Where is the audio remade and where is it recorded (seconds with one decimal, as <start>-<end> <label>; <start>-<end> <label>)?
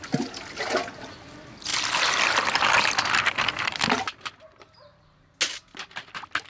0.0-1.7 recorded; 1.7-4.3 remade; 4.3-6.5 recorded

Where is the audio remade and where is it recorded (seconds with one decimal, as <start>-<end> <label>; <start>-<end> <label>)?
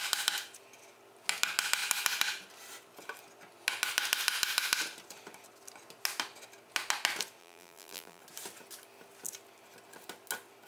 0.0-7.4 recorded; 7.4-8.2 remade; 8.2-10.7 recorded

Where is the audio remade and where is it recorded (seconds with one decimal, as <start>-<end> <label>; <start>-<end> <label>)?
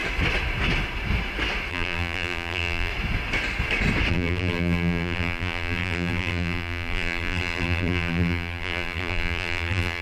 0.0-1.7 recorded; 1.7-2.9 remade; 2.9-4.1 recorded; 4.1-10.0 remade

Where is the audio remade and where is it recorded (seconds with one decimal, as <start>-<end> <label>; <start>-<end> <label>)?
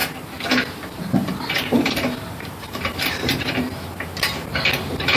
0.0-5.2 remade